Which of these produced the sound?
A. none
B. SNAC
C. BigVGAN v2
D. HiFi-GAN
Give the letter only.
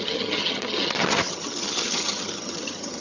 D